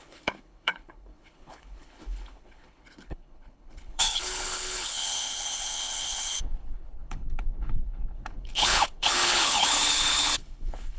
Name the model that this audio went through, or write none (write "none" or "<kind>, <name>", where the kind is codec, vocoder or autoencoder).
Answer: codec, HILCodec